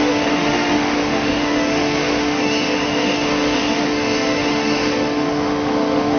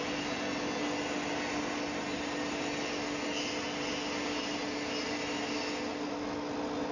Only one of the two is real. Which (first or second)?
second